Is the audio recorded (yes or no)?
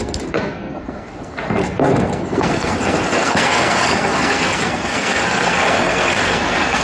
no